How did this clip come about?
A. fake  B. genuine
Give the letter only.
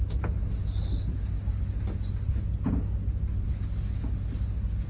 B